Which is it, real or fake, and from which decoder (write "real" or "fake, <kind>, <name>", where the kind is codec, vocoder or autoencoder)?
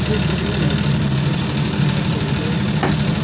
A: real